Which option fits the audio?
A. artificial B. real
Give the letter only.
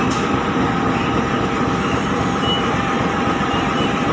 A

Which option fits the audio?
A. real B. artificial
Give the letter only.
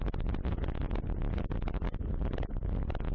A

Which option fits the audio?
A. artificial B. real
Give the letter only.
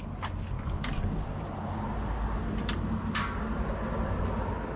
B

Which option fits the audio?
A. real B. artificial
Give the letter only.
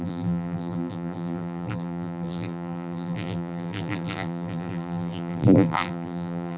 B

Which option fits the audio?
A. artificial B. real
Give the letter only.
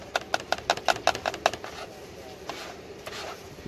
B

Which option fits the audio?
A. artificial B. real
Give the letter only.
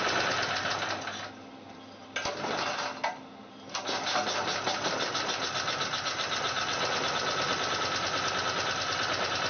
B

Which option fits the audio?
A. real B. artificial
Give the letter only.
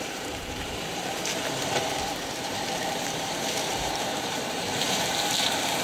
B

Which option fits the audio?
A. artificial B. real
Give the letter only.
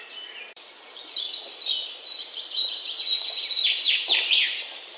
A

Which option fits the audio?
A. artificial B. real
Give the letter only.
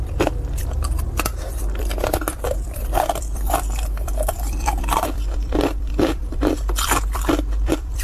A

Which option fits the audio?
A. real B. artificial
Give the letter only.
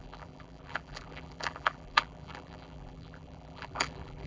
B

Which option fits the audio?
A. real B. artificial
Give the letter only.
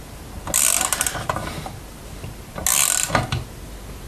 A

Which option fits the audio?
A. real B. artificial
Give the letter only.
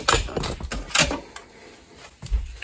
A